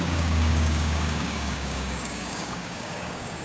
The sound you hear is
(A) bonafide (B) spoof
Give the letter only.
B